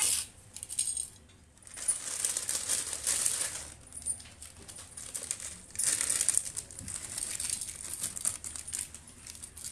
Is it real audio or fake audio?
real